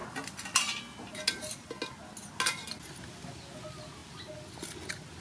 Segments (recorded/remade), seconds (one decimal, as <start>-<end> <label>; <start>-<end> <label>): 0.0-5.2 recorded